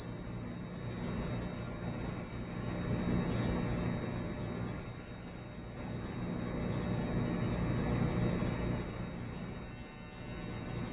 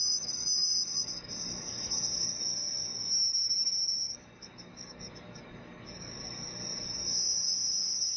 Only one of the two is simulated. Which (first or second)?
second